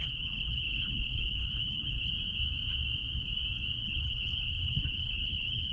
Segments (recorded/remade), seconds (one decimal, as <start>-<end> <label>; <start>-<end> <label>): 0.0-2.1 remade; 2.1-3.8 recorded; 3.8-5.7 remade